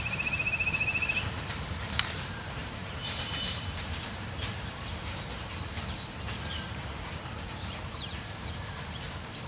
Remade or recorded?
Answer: remade